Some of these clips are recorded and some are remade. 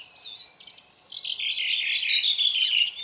recorded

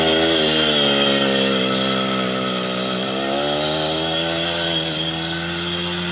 recorded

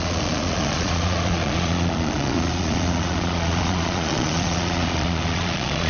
remade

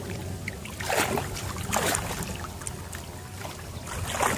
recorded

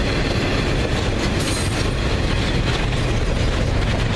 recorded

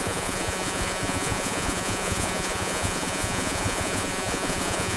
remade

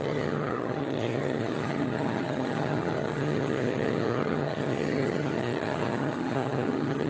remade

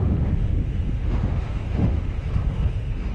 remade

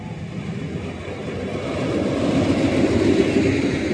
recorded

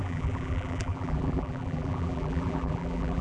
remade